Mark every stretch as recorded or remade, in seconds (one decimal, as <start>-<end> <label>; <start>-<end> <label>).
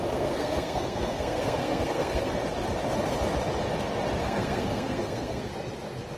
0.0-2.4 remade; 2.4-4.2 recorded; 4.2-5.5 remade; 5.5-6.2 recorded